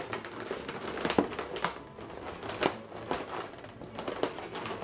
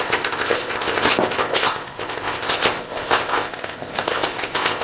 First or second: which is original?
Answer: first